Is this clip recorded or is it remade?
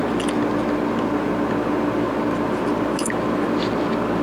recorded